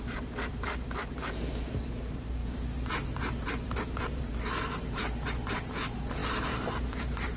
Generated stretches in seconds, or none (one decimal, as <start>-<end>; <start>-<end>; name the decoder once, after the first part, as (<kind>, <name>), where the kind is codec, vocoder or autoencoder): 0.0-7.4 (vocoder, BigVGAN v2)